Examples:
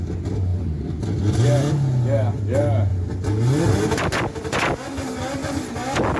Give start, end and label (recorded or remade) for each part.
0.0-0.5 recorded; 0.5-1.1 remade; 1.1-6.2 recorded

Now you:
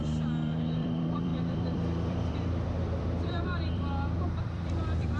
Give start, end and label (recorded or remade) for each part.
0.0-5.2 remade